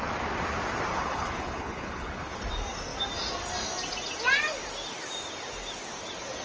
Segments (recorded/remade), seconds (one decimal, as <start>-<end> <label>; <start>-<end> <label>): 0.0-0.9 recorded; 0.9-2.4 remade; 2.4-6.4 recorded